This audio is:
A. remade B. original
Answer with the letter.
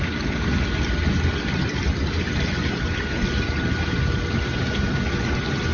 B